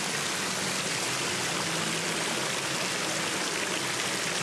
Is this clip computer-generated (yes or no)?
no